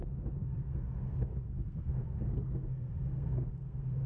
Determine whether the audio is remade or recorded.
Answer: remade